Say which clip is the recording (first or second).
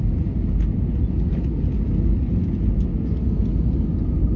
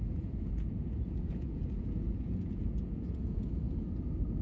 first